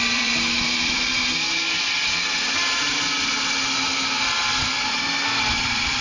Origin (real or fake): fake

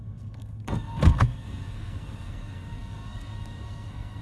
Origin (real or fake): fake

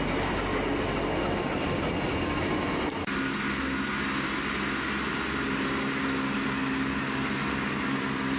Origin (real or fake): real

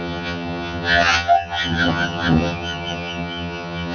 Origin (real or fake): fake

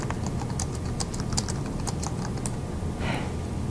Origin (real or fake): real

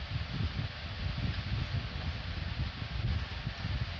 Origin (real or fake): real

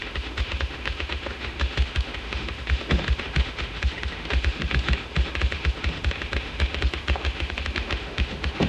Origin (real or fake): fake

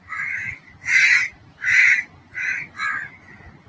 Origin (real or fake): real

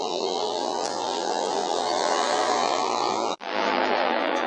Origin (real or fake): fake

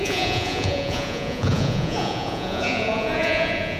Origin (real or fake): fake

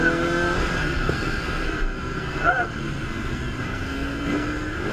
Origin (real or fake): fake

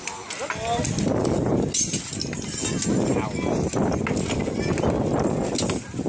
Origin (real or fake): real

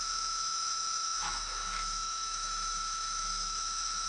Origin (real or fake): fake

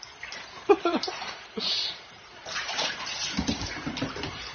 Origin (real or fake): fake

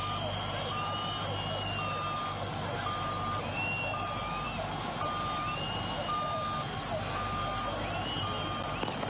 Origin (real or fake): real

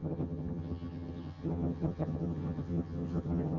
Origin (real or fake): fake